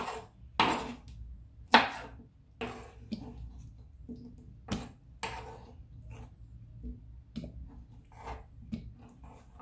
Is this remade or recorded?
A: recorded